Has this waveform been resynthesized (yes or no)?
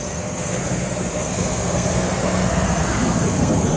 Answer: yes